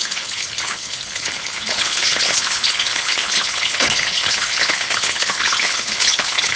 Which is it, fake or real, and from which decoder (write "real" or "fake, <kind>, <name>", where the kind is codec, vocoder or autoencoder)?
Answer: fake, codec, HILCodec